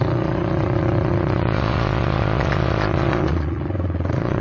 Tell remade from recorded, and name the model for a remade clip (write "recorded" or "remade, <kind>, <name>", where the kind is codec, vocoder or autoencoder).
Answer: remade, vocoder, Vocos